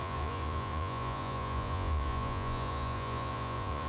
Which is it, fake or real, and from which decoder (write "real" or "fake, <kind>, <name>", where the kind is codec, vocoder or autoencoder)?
fake, vocoder, Vocos